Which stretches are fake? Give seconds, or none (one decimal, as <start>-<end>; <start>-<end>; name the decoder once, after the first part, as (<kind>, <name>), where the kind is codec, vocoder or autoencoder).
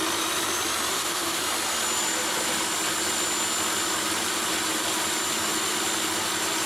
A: 0.9-1.4 (autoencoder, DAC-VAE)